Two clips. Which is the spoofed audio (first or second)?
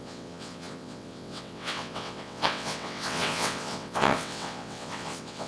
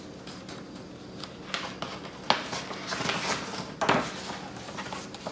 first